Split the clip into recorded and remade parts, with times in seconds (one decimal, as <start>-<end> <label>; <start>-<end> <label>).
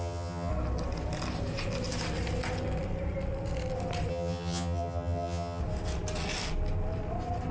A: 0.0-0.5 remade; 0.5-4.1 recorded; 4.1-5.6 remade; 5.6-7.5 recorded